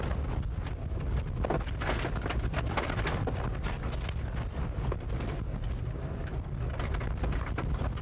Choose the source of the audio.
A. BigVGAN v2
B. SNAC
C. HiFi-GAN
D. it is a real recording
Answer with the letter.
D